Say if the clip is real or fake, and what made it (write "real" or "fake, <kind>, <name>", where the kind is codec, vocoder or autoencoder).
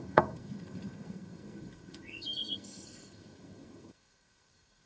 fake, codec, SNAC